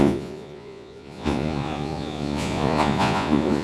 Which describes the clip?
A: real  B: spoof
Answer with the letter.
B